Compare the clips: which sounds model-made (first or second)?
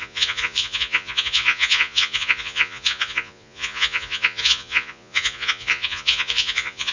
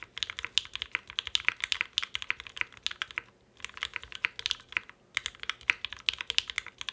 first